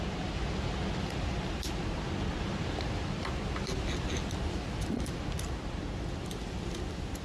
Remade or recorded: recorded